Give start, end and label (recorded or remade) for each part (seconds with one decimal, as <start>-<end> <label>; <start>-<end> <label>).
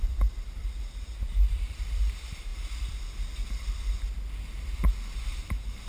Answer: 0.0-0.6 remade; 0.6-1.5 recorded; 1.5-2.5 remade; 2.5-5.4 recorded; 5.4-5.9 remade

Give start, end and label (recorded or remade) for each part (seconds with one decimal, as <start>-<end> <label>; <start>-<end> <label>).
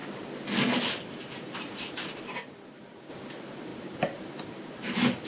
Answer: 0.0-1.0 recorded; 1.0-2.4 remade; 2.4-3.1 recorded; 3.1-5.3 remade